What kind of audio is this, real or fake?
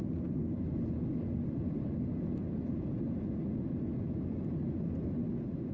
real